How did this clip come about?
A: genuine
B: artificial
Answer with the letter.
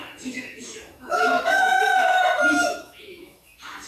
B